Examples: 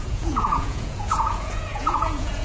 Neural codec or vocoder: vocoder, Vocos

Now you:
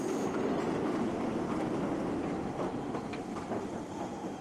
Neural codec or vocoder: none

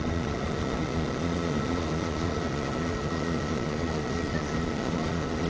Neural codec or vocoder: vocoder, Vocos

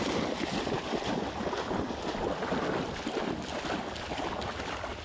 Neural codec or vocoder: none